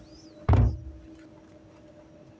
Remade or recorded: recorded